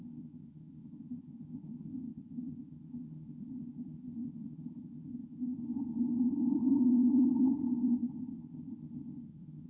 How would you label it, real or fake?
fake